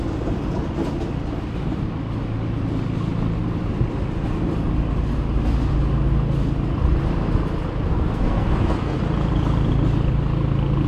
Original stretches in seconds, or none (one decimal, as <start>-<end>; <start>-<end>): 0.0-7.9; 9.0-10.9